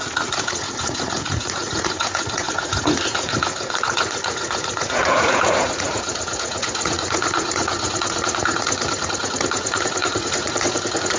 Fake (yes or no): yes